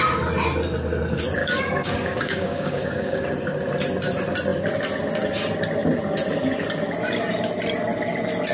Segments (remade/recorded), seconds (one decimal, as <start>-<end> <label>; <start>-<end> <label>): 0.0-1.4 recorded; 1.4-3.3 remade; 3.3-8.5 recorded